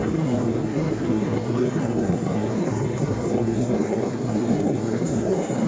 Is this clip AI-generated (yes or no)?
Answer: yes